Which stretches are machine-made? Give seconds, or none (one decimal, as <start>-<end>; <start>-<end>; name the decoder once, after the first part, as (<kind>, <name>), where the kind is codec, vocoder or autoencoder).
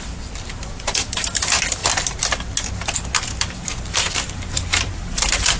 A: 0.0-1.8 (vocoder, BigVGAN v2); 3.2-5.6